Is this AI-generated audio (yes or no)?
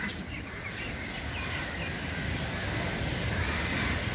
no